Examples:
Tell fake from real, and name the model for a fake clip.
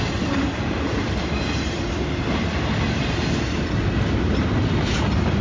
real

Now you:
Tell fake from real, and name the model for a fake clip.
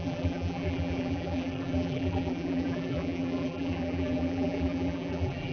fake, vocoder, BigVGAN v2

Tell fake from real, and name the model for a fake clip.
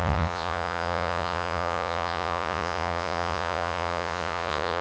fake, vocoder, Vocos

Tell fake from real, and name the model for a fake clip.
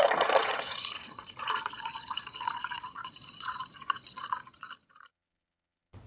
fake, vocoder, Vocos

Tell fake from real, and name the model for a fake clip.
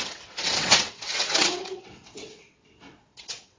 fake, vocoder, WaveNeXt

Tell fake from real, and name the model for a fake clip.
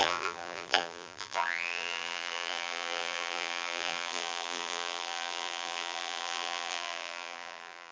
fake, vocoder, BigVGAN v2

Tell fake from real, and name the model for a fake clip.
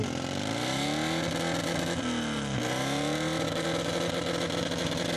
real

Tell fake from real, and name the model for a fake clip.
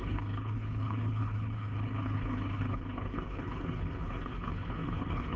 fake, codec, HILCodec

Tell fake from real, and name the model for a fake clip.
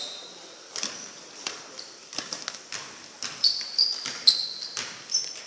real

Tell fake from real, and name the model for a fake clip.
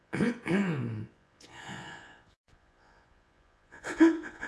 fake, vocoder, Vocos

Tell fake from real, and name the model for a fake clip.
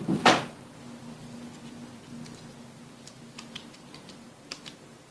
real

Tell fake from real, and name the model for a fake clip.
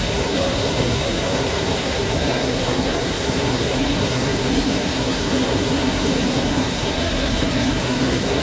fake, codec, SNAC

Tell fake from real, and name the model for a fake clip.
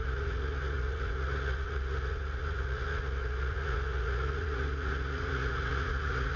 fake, vocoder, Vocos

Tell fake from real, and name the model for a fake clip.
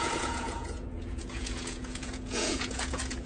fake, vocoder, Vocos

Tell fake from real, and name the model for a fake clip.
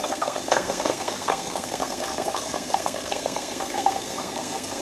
fake, codec, SNAC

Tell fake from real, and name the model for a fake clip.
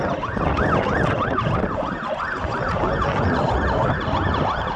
real